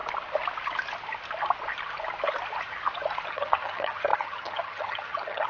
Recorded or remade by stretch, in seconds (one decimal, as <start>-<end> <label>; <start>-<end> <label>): 0.0-3.3 recorded; 3.3-5.5 remade